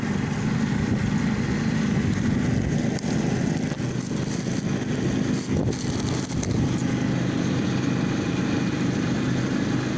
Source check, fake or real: real